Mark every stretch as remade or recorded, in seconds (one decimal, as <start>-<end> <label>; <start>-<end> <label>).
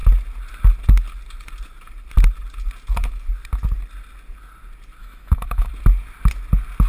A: 0.0-5.0 recorded; 5.0-5.7 remade; 5.7-6.9 recorded